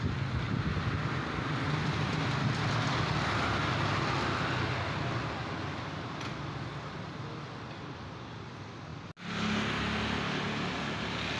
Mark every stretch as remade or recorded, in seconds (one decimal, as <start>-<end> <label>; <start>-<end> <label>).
0.0-11.4 recorded